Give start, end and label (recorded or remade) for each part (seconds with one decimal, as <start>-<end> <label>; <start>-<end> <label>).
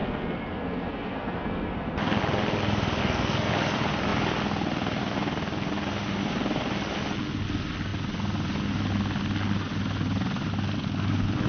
0.0-2.2 remade; 2.2-3.0 recorded; 3.0-3.5 remade; 3.5-11.5 recorded